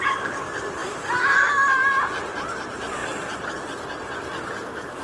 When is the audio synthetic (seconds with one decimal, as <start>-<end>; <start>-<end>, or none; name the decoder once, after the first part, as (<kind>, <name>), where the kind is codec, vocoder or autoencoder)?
0.8-1.5 (vocoder, BigVGAN v2)